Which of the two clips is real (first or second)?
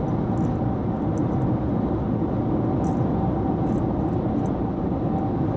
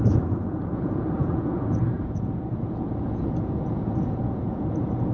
first